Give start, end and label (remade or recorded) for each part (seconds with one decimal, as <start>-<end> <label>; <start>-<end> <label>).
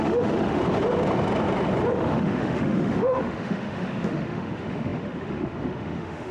0.0-0.6 remade; 0.6-1.9 recorded; 1.9-6.3 remade